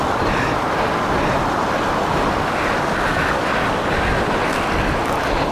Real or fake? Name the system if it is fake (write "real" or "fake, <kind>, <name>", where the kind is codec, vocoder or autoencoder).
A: real